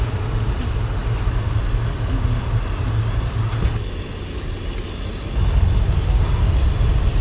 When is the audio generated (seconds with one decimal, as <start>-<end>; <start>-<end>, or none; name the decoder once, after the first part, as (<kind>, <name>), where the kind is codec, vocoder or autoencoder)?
none